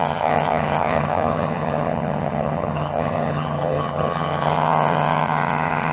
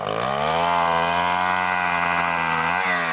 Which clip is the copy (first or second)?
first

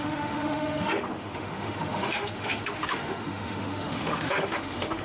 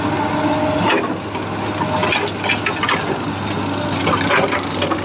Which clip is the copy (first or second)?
first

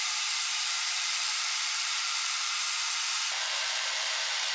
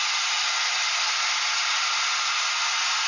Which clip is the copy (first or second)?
first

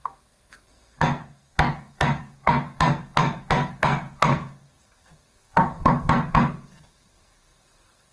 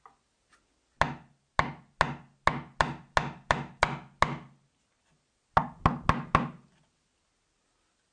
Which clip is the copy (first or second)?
first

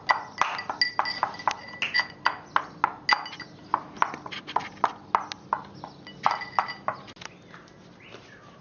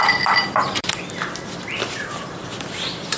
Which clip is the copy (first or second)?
second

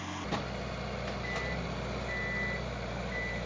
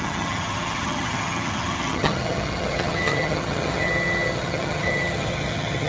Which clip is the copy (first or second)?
second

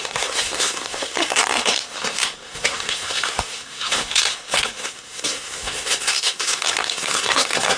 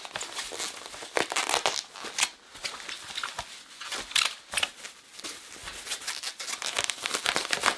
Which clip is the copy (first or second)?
first